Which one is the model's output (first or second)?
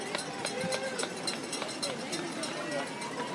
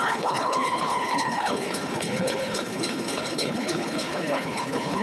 second